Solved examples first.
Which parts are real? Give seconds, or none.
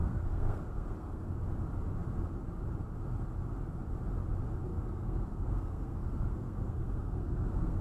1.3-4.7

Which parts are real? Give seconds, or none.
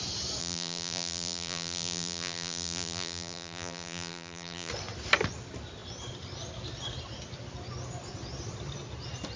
0.0-0.4; 4.7-9.4